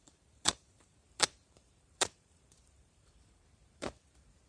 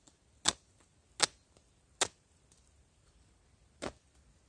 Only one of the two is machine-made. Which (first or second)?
first